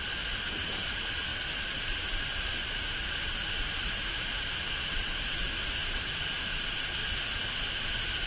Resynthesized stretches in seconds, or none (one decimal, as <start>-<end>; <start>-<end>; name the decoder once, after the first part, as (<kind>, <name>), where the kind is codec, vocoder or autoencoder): 0.0-7.0 (vocoder, BigVGAN v2); 7.6-8.3